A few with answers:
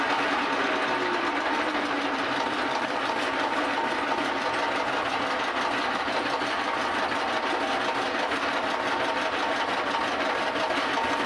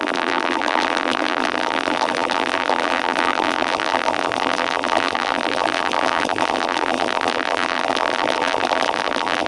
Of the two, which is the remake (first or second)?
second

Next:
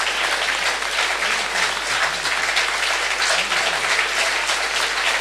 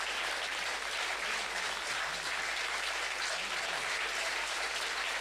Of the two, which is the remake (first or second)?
second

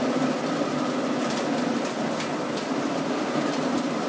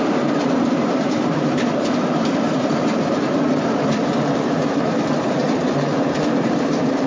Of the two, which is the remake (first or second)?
second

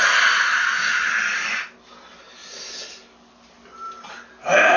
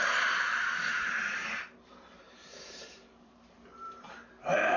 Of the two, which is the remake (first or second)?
second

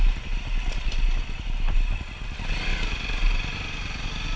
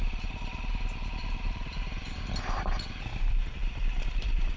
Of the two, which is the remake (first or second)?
second